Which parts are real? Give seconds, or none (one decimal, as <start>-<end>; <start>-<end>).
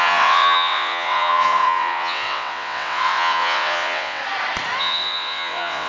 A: 4.2-4.8